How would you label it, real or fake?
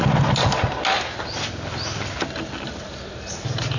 real